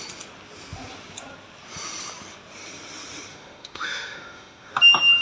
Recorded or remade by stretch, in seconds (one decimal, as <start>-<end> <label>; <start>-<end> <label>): 0.0-3.3 recorded; 3.3-4.7 remade; 4.7-5.2 recorded